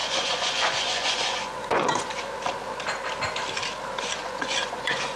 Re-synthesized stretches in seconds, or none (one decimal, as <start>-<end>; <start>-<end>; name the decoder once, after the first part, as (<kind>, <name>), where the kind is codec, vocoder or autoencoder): 0.0-2.2 (vocoder, Vocos); 4.2-5.2